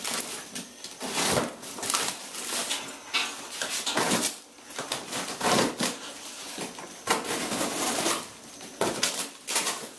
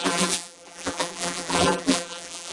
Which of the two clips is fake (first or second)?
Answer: second